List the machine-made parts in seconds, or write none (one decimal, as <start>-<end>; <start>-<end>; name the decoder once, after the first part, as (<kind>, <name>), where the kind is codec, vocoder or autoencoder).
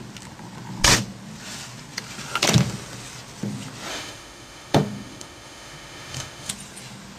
3.9-6.5 (autoencoder, DAC-VAE)